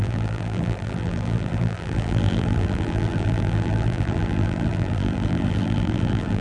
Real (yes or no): no